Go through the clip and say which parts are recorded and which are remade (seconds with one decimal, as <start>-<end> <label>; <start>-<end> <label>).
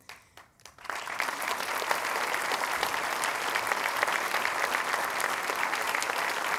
0.0-6.6 recorded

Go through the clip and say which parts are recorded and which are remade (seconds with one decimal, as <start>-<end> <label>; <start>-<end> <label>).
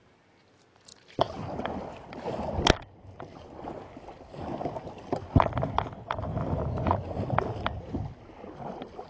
0.0-9.1 recorded